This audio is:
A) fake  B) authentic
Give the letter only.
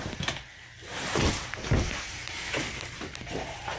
B